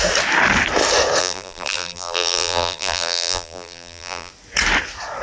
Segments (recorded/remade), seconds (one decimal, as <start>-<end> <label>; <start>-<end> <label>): 0.0-1.2 recorded; 1.2-4.3 remade; 4.3-5.2 recorded